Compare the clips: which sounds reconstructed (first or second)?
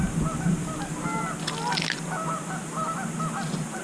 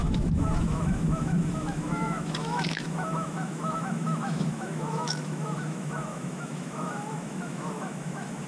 second